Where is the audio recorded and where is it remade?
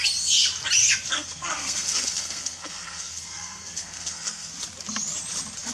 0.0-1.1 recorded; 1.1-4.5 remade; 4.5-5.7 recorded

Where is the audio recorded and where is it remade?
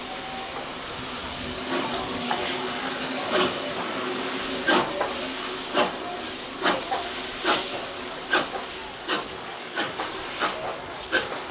0.0-1.2 recorded; 1.2-4.4 remade; 4.4-8.8 recorded; 8.8-10.0 remade; 10.0-10.7 recorded; 10.7-11.5 remade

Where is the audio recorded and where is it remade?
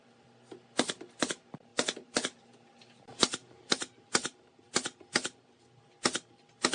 0.0-3.1 recorded; 3.1-4.3 remade; 4.3-6.7 recorded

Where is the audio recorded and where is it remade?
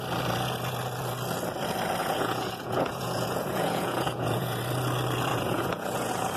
0.0-2.0 recorded; 2.0-4.6 remade; 4.6-5.3 recorded; 5.3-6.4 remade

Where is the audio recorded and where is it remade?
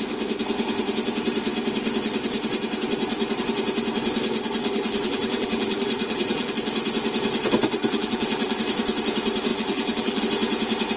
0.0-4.6 recorded; 4.6-6.5 remade; 6.5-7.8 recorded; 7.8-8.6 remade; 8.6-9.5 recorded; 9.5-10.2 remade; 10.2-11.0 recorded